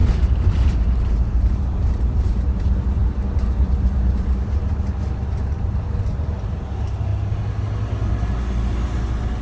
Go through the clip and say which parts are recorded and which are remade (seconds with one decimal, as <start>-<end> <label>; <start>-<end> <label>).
0.0-0.5 recorded; 0.5-7.1 remade; 7.1-9.4 recorded